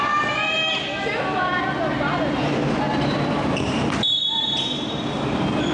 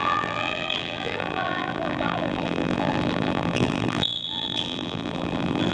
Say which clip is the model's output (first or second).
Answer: second